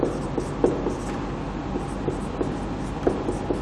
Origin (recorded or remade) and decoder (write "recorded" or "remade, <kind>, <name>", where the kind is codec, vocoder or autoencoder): recorded